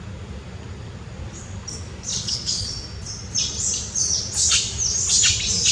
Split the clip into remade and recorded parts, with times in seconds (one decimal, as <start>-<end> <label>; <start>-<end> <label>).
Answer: 0.0-2.1 recorded; 2.1-2.7 remade; 2.7-5.7 recorded